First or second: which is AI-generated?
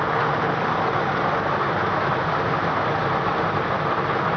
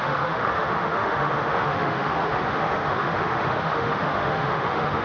second